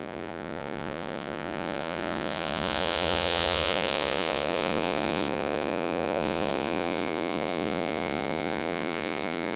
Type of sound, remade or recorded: remade